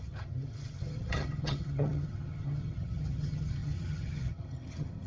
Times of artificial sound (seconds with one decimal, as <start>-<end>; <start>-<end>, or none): 0.0-5.1